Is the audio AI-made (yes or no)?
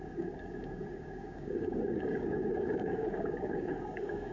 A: yes